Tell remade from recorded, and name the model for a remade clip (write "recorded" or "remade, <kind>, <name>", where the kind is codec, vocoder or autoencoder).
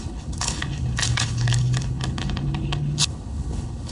remade, codec, HILCodec